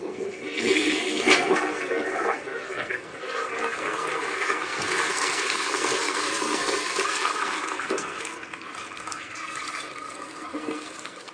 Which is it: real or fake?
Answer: fake